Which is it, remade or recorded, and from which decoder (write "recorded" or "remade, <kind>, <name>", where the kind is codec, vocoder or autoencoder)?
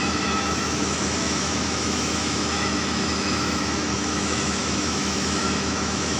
remade, autoencoder, DAC-VAE